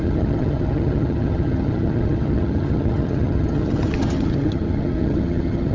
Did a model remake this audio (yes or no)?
yes